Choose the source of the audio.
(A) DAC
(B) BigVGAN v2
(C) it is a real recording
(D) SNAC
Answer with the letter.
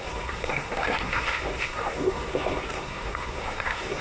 D